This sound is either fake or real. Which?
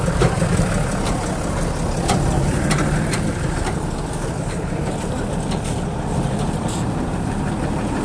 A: real